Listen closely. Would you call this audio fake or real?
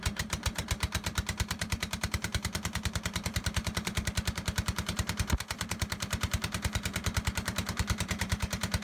fake